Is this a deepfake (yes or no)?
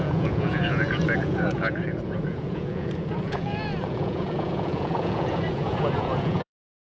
yes